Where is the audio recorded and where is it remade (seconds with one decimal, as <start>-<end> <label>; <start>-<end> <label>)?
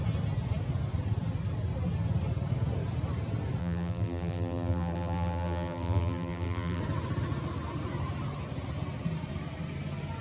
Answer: 0.0-3.6 recorded; 3.6-6.8 remade; 6.8-10.2 recorded